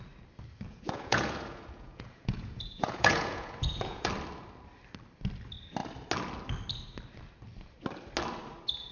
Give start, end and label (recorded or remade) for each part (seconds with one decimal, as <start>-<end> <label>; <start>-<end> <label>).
0.0-0.7 recorded; 0.7-4.1 remade; 4.1-8.9 recorded